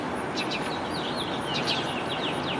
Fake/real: real